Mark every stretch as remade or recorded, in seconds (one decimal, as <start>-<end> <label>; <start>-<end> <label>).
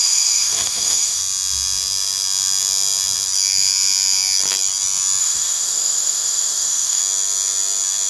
0.0-1.2 remade; 1.2-5.2 recorded; 5.2-7.0 remade; 7.0-8.1 recorded